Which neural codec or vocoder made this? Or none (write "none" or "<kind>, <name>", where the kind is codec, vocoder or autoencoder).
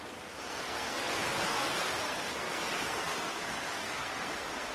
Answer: codec, SNAC